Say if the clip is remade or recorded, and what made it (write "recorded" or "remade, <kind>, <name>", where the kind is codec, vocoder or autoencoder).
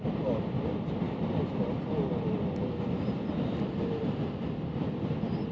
remade, vocoder, BigVGAN v2